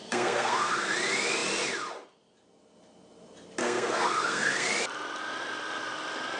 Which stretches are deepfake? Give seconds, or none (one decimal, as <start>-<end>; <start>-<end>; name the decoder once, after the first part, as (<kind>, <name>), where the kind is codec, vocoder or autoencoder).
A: 0.0-0.9 (codec, SNAC); 3.6-4.7